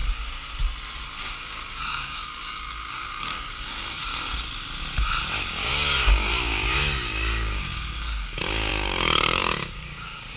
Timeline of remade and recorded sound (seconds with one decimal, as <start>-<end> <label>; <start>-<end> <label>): 0.0-1.2 recorded; 1.2-4.1 remade; 4.1-5.4 recorded; 5.4-10.4 remade